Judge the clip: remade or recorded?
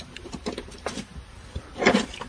recorded